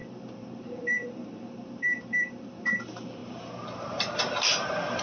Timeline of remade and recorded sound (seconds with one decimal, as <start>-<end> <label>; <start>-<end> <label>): 0.0-5.0 remade